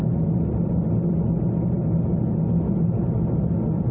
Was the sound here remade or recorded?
recorded